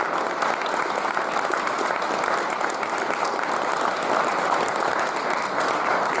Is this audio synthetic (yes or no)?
no